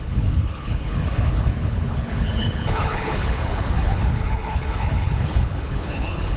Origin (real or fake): fake